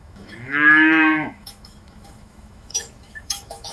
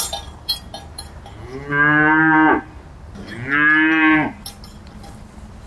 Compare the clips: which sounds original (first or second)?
second